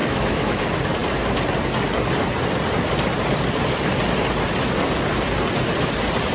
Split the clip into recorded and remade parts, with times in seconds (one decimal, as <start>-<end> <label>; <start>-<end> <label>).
0.0-0.6 remade; 0.6-6.3 recorded